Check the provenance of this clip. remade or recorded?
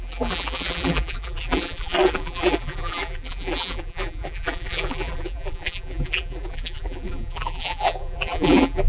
remade